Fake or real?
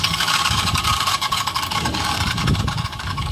fake